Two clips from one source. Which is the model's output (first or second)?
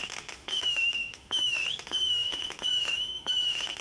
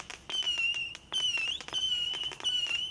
first